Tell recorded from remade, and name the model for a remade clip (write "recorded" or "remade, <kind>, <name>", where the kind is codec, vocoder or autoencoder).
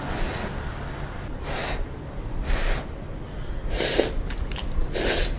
recorded